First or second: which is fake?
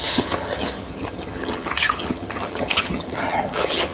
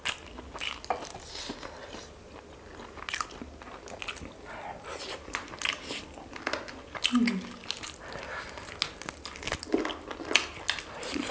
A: first